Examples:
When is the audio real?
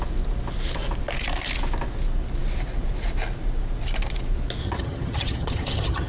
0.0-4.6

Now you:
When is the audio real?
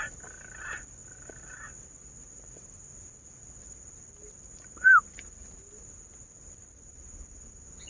0.0-7.9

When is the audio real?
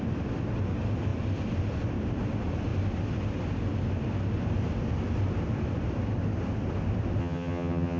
0.0-7.2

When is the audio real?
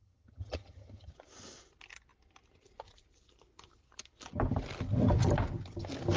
1.1-6.2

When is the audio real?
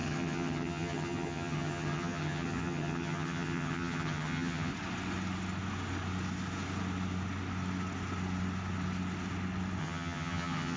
4.7-9.8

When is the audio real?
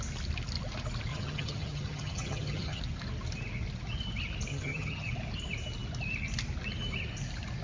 0.0-1.1; 2.8-4.5; 5.1-7.6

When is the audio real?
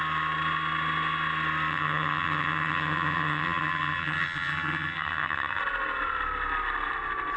0.0-1.7; 5.6-7.4